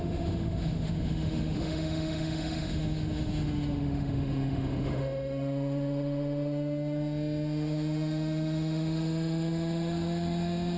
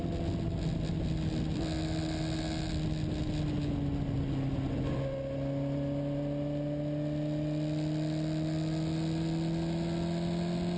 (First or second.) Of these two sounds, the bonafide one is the second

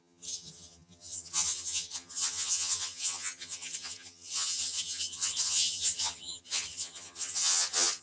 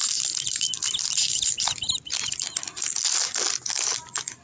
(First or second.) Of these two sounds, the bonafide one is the second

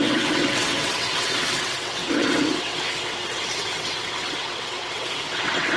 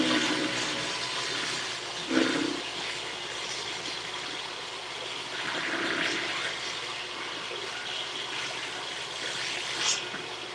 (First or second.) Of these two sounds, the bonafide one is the second